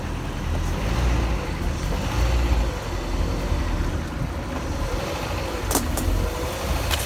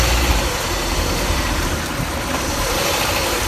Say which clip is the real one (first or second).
first